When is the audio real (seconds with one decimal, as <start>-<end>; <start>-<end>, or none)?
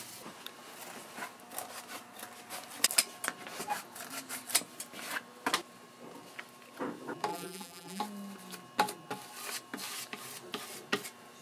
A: 0.0-7.3; 8.0-11.4